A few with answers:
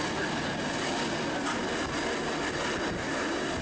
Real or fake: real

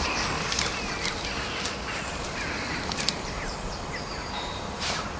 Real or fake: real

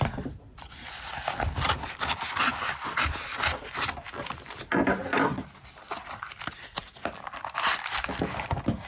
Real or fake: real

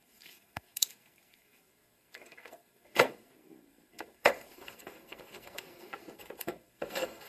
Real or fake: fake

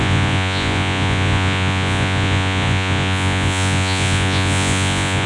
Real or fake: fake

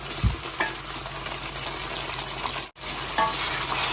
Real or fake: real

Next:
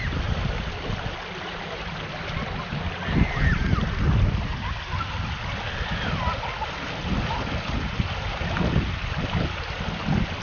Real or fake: real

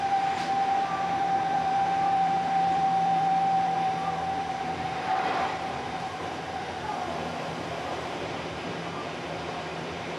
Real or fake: fake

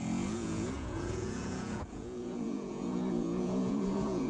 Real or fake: fake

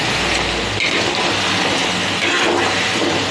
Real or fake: real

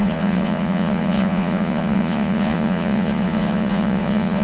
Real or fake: fake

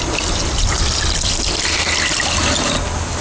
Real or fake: real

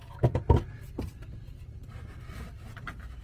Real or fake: real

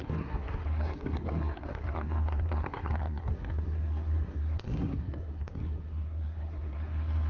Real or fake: fake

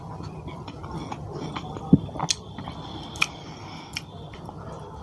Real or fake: real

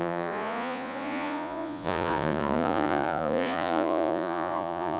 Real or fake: fake